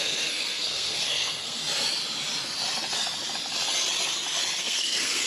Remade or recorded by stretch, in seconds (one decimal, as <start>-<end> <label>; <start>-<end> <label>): 0.0-1.6 remade; 1.6-4.6 recorded; 4.6-5.3 remade